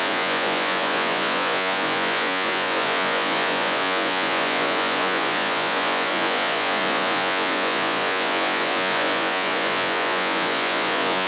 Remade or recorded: remade